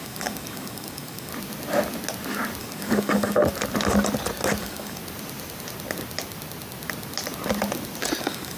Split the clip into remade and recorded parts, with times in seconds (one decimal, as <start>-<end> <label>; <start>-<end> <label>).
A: 0.0-1.3 remade; 1.3-2.6 recorded; 2.6-3.4 remade; 3.4-4.6 recorded; 4.6-5.0 remade; 5.0-8.2 recorded; 8.2-8.6 remade